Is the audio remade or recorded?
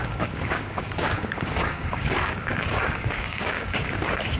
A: remade